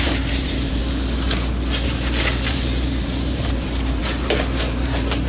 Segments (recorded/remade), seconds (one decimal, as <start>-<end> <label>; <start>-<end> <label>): 0.0-0.8 remade; 0.8-2.5 recorded; 2.5-4.0 remade; 4.0-4.6 recorded; 4.6-5.3 remade